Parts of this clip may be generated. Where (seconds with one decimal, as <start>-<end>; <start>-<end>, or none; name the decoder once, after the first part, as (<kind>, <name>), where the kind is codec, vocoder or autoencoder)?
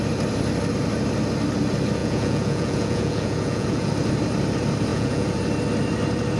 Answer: 2.0-3.9 (vocoder, Vocos); 4.9-5.4